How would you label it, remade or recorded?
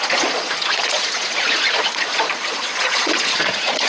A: remade